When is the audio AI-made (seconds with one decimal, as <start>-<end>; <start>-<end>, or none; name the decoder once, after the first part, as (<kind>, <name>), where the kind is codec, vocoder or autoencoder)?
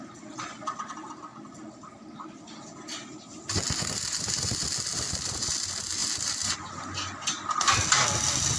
none